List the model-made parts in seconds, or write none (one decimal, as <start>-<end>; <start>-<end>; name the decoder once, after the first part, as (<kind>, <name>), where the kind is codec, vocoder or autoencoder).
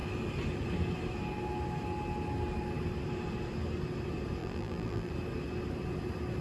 4.4-5.1 (vocoder, BigVGAN v2)